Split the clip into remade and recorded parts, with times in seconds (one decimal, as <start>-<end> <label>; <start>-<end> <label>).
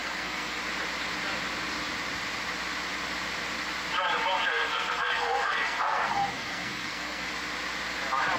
0.0-0.6 remade; 0.6-4.5 recorded; 4.5-7.3 remade; 7.3-8.4 recorded